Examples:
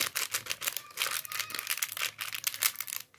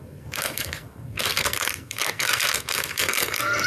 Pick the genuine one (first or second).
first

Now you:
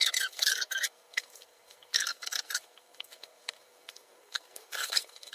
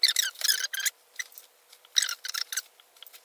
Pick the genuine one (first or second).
second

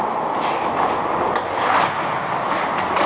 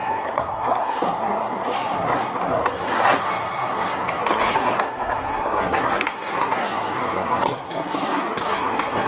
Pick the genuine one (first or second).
first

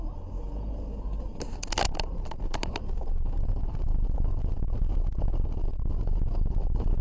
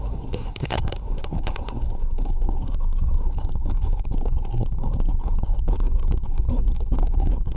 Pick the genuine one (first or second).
first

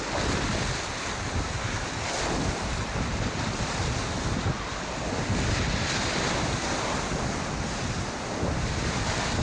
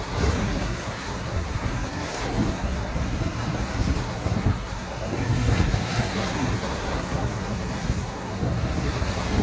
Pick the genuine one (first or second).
first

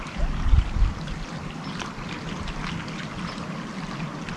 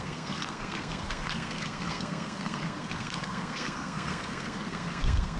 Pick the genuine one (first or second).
first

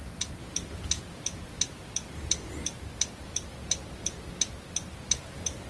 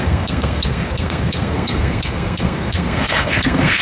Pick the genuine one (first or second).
first